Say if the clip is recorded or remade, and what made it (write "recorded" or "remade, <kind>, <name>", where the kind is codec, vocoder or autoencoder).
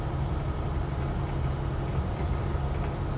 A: recorded